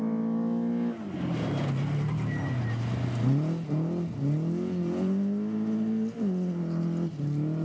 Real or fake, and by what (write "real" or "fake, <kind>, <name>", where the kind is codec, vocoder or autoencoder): real